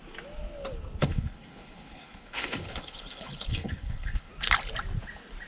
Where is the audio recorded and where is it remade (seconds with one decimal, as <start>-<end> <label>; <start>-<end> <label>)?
0.0-1.0 recorded; 1.0-4.3 remade; 4.3-5.5 recorded